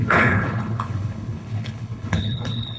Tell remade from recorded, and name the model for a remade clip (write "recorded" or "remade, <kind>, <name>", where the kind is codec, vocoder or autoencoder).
remade, codec, HILCodec